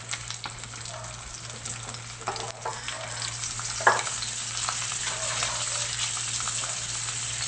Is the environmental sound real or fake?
real